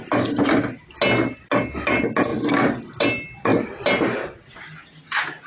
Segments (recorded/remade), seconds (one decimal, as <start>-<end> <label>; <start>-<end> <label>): 0.0-5.5 recorded